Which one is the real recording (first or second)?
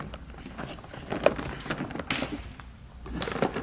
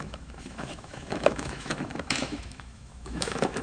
first